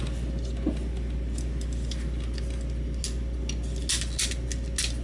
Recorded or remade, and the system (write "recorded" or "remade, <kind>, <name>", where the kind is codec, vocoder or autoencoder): recorded